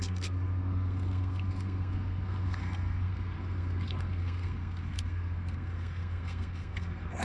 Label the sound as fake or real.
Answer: fake